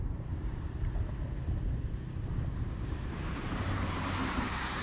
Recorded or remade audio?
remade